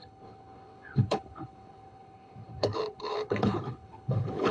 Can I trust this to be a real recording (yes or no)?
no